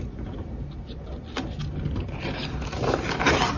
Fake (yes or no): no